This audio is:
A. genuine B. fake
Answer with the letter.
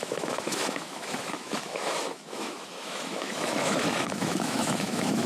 B